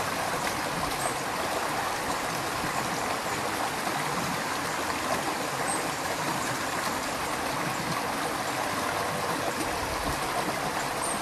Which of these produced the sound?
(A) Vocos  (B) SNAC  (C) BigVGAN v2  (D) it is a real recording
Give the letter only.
D